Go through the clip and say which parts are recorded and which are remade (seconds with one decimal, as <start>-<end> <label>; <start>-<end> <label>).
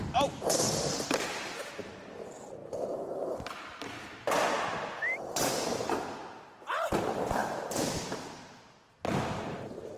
0.0-7.4 recorded; 7.4-8.8 remade; 8.8-10.0 recorded